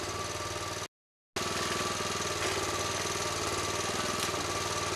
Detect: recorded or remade recorded